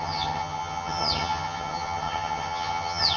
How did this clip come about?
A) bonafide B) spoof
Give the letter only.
B